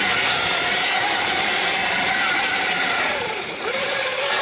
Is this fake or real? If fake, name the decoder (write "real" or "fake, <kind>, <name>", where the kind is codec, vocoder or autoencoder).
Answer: fake, vocoder, BigVGAN v2